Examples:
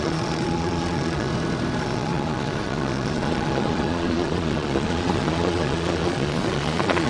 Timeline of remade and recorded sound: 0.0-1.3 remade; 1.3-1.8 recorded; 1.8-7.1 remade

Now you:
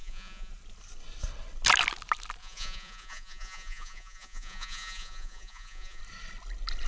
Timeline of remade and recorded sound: 0.0-0.5 remade; 0.5-2.4 recorded; 2.4-6.0 remade; 6.0-6.9 recorded

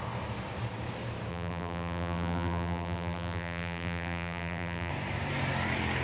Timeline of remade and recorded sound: 0.0-1.3 recorded; 1.3-4.9 remade; 4.9-6.0 recorded

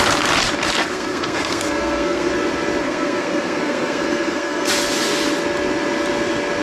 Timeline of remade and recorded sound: 0.0-0.8 recorded; 0.8-2.3 remade; 2.3-2.8 recorded; 2.8-4.7 remade; 4.7-6.6 recorded

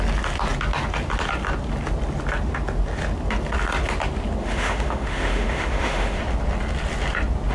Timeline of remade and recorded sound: 0.0-4.4 recorded; 4.4-6.2 remade; 6.2-7.5 recorded

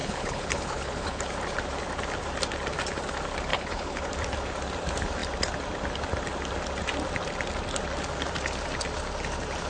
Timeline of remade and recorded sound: 0.0-1.2 remade; 1.2-3.5 recorded; 3.5-4.0 remade; 4.0-9.7 recorded

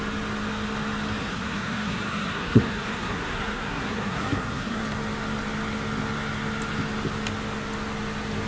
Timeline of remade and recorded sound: 0.0-1.2 recorded; 1.2-4.8 remade; 4.8-8.5 recorded